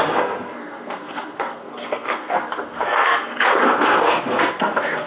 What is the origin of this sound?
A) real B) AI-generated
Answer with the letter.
B